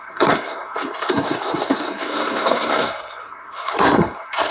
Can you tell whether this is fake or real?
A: fake